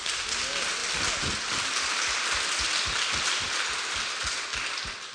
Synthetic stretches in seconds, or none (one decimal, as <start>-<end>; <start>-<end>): none